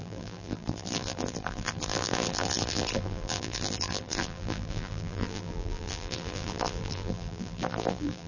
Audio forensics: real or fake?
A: fake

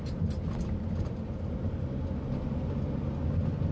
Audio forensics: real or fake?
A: real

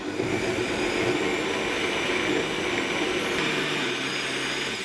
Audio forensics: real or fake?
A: real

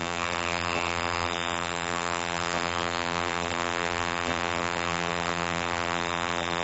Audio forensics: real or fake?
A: fake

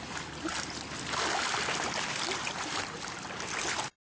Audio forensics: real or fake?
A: real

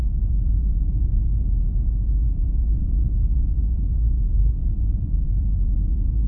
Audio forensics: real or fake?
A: fake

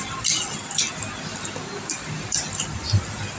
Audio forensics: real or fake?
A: real